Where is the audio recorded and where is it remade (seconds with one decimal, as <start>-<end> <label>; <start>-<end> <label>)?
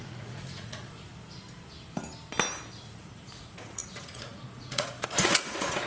0.0-1.1 remade; 1.1-2.8 recorded; 2.8-5.9 remade